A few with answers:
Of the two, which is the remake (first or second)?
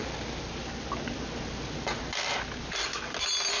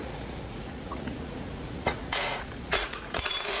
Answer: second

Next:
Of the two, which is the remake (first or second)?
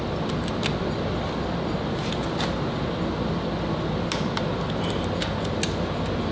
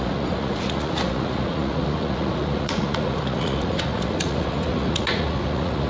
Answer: second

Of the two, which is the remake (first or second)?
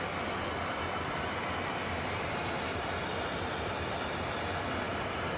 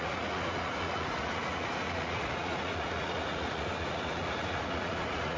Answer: second